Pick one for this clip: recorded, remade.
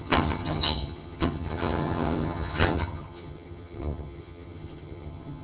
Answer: remade